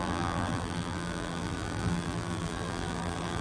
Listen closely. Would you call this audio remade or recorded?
remade